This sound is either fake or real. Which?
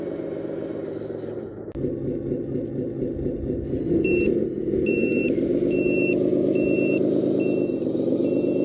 real